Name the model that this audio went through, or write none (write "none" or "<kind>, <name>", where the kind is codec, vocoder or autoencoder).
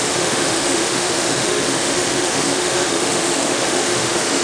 autoencoder, DAC-VAE